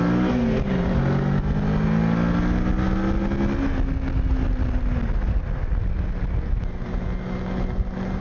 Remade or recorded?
recorded